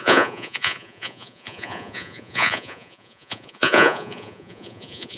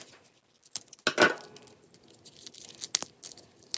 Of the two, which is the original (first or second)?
second